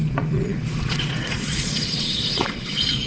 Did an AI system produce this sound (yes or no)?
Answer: yes